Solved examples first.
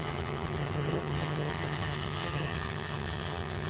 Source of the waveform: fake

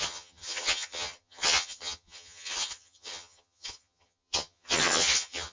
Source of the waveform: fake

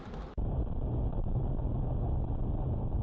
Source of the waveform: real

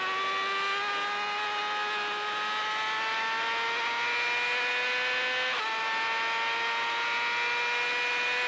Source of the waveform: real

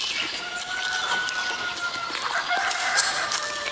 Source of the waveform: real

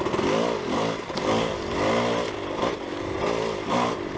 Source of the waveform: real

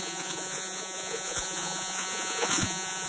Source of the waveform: fake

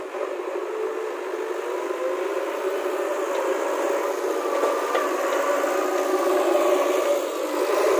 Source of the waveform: real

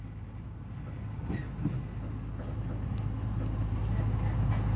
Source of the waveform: real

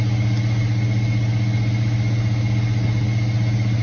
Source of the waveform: real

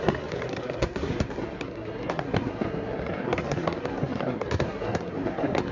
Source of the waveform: fake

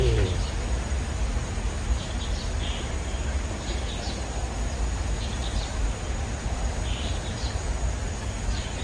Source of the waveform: fake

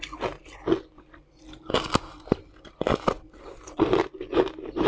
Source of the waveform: real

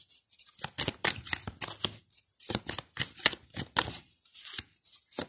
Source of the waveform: real